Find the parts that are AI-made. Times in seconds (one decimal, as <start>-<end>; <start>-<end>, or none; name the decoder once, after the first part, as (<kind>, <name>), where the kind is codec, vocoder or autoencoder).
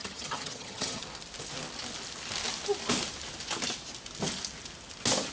0.0-1.0 (vocoder, HiFi-GAN)